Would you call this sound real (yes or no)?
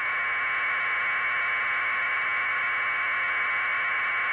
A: yes